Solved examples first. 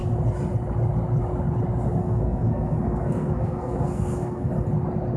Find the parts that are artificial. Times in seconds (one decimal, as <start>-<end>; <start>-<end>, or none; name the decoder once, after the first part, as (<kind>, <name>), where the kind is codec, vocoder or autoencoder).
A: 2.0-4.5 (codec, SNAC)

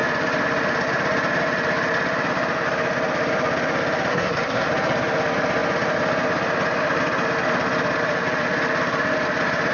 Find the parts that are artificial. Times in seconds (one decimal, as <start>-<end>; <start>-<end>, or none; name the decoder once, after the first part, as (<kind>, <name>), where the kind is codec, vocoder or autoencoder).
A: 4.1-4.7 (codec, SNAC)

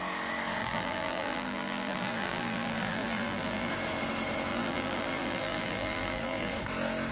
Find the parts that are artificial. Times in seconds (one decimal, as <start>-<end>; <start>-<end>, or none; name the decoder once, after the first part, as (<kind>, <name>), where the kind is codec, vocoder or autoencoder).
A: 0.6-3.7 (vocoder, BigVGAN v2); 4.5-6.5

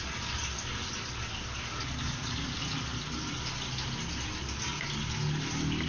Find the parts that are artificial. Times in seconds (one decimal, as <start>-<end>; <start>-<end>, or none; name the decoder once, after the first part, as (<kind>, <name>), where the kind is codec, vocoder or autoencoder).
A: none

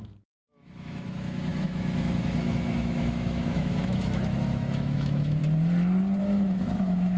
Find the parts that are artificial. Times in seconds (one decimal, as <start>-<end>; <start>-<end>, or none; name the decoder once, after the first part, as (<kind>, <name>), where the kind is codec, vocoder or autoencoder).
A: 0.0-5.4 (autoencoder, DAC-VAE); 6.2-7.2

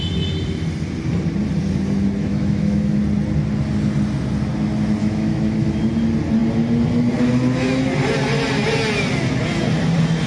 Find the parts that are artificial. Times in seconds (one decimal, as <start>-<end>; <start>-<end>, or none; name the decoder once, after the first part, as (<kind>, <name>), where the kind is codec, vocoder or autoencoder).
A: 2.2-3.0 (autoencoder, DAC-VAE); 5.0-5.8

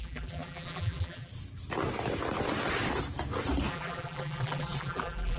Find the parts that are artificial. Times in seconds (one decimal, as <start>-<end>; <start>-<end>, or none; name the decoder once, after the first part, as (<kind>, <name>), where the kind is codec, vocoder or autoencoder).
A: 0.0-1.3 (vocoder, BigVGAN v2); 3.7-5.4